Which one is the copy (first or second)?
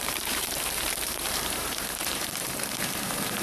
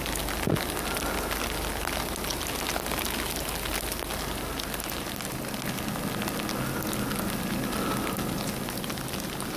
first